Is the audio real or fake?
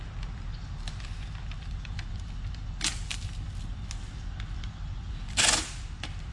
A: real